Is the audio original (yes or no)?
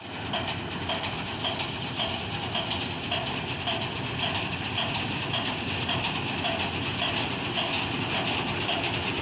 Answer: yes